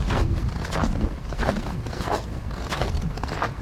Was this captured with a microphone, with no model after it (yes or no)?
no